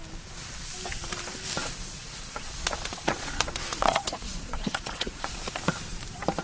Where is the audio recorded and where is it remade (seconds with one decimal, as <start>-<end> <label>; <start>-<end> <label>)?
0.0-1.6 recorded; 1.6-5.4 remade; 5.4-6.4 recorded